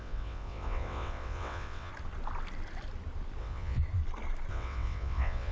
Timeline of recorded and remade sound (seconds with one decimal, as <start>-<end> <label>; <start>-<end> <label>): 0.0-1.9 remade; 1.9-3.4 recorded; 3.4-3.8 remade; 3.8-4.5 recorded; 4.5-5.5 remade